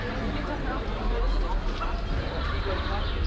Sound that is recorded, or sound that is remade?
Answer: recorded